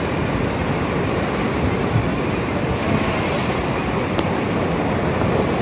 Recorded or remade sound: recorded